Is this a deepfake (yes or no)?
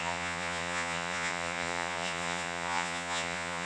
yes